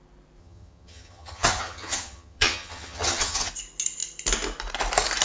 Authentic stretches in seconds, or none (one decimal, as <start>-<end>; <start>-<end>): 0.0-0.4; 3.5-5.2